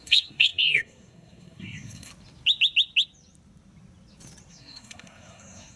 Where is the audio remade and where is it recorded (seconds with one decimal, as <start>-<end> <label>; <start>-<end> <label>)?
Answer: 0.0-2.1 remade; 2.1-4.5 recorded; 4.5-5.8 remade